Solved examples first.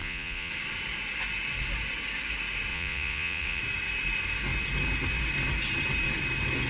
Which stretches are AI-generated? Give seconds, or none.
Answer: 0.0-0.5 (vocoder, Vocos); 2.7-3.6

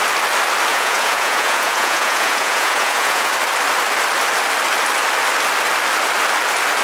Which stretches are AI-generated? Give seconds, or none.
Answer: 0.7-3.3 (vocoder, Vocos)

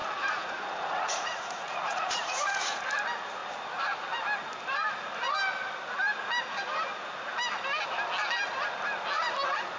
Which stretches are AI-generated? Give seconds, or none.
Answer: 0.0-2.8 (vocoder, Vocos)